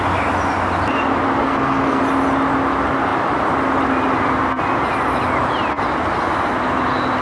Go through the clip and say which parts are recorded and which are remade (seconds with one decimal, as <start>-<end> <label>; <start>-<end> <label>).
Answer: 0.0-1.4 recorded; 1.4-2.0 remade; 2.0-7.2 recorded